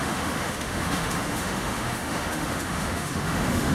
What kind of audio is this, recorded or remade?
remade